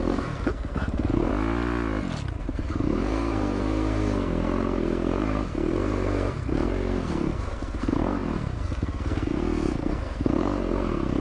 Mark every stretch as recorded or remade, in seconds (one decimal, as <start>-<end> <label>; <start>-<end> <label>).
0.0-1.3 remade; 1.3-2.4 recorded; 2.4-11.2 remade

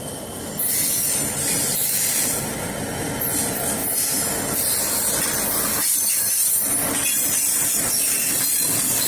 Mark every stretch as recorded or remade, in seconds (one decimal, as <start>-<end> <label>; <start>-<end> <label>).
0.0-9.1 recorded

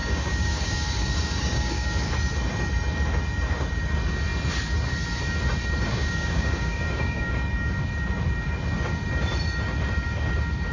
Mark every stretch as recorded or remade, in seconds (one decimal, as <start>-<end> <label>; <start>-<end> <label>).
0.0-2.1 remade; 2.1-5.9 recorded; 5.9-7.3 remade; 7.3-10.7 recorded

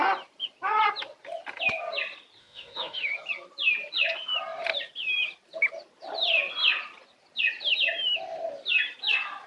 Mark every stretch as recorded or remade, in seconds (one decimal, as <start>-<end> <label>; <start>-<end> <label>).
0.0-2.4 recorded; 2.4-3.1 remade; 3.1-9.5 recorded

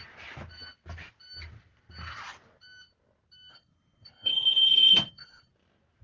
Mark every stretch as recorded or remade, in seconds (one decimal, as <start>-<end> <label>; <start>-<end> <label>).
0.0-3.5 recorded; 3.5-5.5 remade; 5.5-6.0 recorded